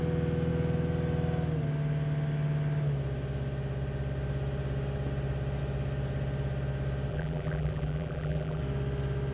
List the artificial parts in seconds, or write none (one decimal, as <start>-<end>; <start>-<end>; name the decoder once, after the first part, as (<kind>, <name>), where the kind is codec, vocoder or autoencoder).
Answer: 7.1-8.6 (vocoder, BigVGAN v2)